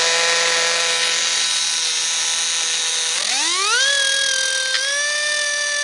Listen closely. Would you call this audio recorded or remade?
recorded